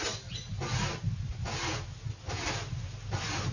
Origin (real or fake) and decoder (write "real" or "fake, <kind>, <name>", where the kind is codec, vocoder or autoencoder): real